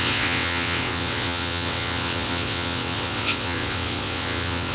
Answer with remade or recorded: remade